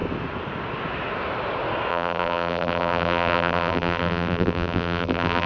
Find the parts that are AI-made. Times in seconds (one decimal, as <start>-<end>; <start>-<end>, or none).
1.9-5.5

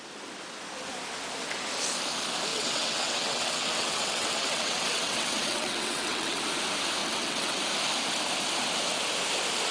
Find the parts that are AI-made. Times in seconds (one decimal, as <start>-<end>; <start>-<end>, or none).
2.5-6.4; 7.0-7.6